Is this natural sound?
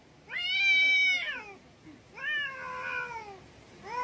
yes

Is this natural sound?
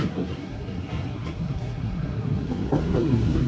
no